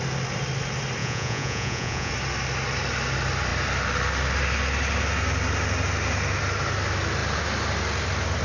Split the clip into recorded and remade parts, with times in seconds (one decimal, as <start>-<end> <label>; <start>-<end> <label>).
0.0-1.0 recorded; 1.0-2.1 remade; 2.1-8.4 recorded